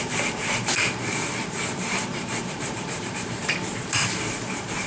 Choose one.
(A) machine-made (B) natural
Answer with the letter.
A